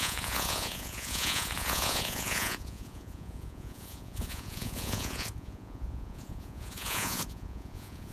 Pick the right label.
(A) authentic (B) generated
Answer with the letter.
B